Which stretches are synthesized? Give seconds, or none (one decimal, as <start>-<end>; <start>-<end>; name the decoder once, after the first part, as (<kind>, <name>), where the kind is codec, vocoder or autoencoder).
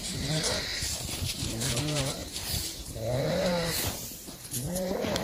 0.0-5.2 (vocoder, BigVGAN v2)